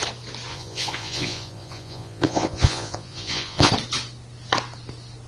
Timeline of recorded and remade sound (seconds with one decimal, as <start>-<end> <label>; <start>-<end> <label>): 0.0-0.5 recorded; 0.5-3.7 remade; 3.7-5.3 recorded